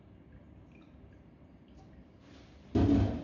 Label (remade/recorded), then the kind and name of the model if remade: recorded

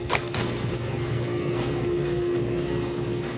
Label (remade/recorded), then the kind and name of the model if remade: remade, codec, SNAC